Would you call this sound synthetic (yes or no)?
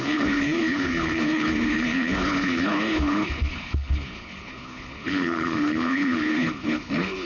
yes